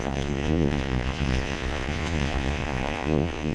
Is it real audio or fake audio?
fake